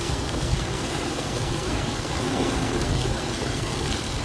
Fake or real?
fake